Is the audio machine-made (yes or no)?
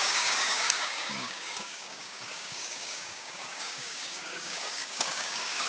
yes